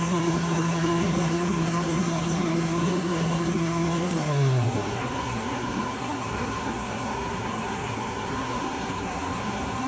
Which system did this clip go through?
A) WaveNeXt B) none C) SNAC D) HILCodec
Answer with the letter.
C